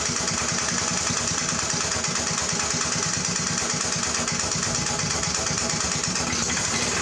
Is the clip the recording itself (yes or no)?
yes